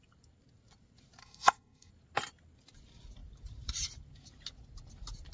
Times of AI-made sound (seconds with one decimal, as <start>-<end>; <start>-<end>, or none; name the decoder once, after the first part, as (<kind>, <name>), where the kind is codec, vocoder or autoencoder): 1.2-1.9 (codec, SNAC)